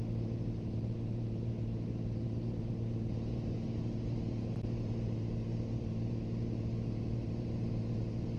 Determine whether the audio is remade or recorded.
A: remade